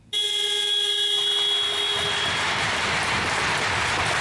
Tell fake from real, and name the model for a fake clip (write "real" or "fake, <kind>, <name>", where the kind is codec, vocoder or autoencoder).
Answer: real